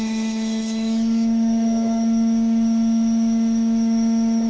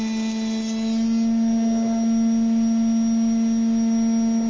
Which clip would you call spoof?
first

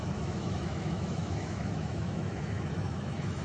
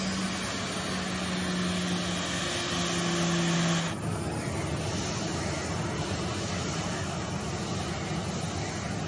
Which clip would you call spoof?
first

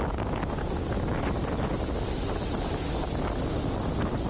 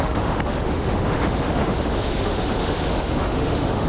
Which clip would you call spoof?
second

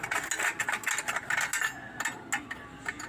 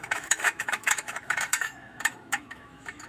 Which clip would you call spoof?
second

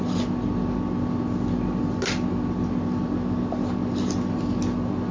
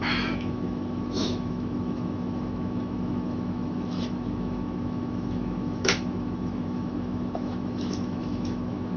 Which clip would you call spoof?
second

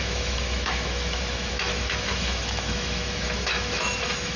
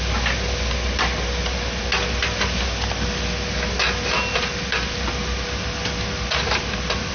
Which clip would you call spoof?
first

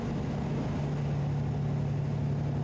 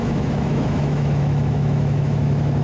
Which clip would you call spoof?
second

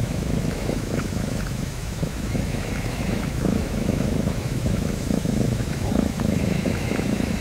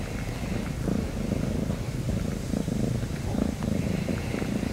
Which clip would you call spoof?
first